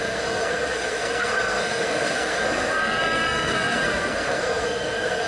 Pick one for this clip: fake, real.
fake